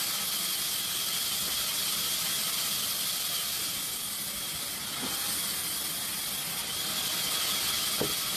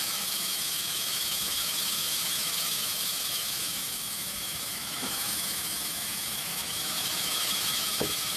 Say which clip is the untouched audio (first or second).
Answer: first